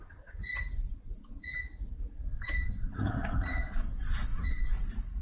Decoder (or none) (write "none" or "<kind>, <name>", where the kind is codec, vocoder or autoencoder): vocoder, Vocos